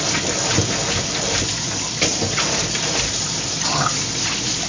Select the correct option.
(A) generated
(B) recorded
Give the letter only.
B